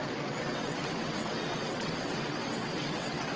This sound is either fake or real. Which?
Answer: fake